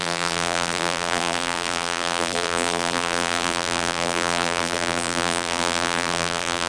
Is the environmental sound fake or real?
fake